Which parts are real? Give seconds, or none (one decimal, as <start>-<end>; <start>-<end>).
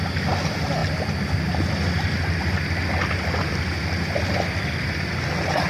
0.0-5.7